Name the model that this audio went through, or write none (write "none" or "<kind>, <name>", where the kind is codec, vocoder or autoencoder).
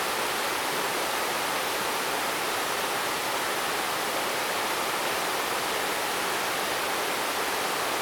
none